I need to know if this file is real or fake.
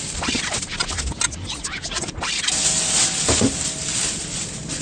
real